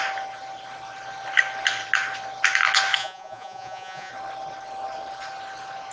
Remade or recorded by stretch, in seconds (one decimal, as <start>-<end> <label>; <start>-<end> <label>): 0.0-3.0 recorded; 3.0-4.1 remade; 4.1-5.9 recorded